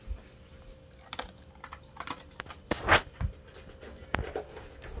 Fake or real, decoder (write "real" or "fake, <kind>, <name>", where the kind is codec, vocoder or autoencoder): real